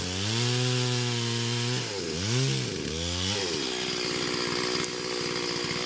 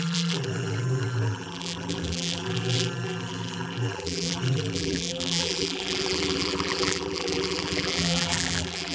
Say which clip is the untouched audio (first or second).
first